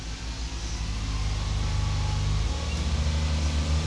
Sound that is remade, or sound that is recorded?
recorded